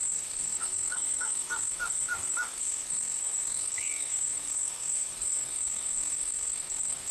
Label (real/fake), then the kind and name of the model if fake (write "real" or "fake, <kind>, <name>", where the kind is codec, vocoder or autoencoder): fake, codec, SNAC